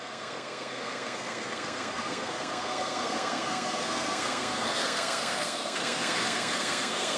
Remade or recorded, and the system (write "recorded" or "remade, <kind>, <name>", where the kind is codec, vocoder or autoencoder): remade, codec, SNAC